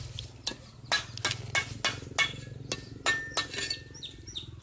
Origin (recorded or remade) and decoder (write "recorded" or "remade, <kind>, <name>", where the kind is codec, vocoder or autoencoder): recorded